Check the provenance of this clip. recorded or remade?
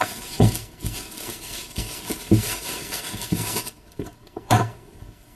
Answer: remade